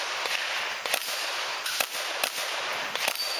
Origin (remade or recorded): recorded